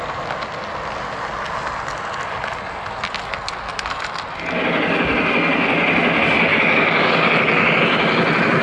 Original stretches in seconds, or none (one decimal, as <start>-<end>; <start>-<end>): 0.0-6.5; 7.8-8.6